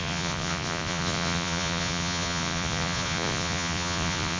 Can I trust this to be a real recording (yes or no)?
no